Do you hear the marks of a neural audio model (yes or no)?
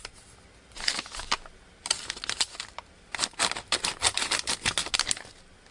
no